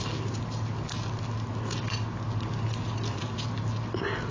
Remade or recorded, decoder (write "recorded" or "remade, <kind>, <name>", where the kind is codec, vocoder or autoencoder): recorded